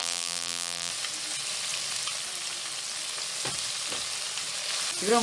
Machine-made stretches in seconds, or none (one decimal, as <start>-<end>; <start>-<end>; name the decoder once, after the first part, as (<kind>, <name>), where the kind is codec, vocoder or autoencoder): 0.0-0.9 (vocoder, BigVGAN v2)